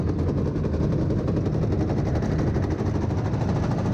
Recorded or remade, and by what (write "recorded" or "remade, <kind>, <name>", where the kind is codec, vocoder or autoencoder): remade, vocoder, BigVGAN v2